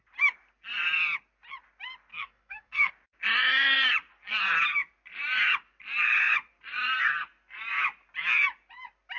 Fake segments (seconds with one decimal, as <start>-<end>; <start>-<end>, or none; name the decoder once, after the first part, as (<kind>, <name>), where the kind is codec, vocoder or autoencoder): 2.1-2.9 (codec, SNAC)